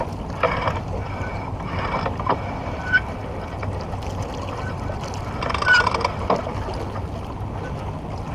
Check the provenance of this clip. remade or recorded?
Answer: recorded